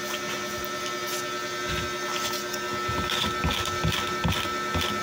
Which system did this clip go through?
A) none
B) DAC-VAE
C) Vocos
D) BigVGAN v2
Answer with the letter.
D